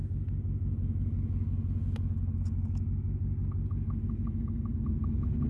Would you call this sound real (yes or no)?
yes